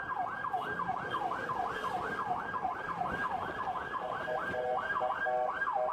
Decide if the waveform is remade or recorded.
recorded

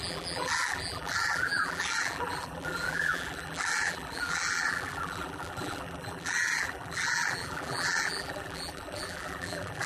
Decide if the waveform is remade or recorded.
remade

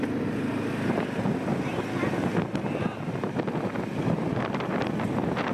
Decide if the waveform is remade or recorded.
recorded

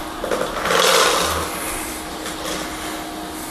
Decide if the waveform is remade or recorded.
recorded